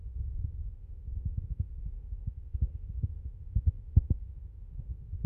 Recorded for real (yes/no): no